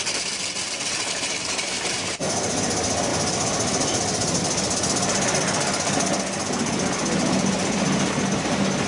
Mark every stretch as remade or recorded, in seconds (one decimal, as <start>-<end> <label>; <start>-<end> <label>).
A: 0.0-8.9 recorded